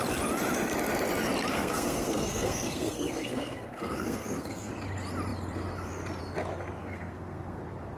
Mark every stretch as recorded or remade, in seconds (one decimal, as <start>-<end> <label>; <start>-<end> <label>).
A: 0.0-1.5 recorded; 1.5-4.7 remade; 4.7-6.8 recorded; 6.8-7.6 remade; 7.6-8.0 recorded